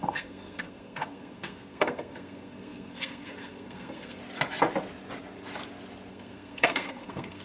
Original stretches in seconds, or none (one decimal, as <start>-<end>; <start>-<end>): 4.2-6.1